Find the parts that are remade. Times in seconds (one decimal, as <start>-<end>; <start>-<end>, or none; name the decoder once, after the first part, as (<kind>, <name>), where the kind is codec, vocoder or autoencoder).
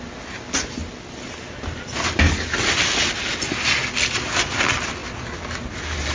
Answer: none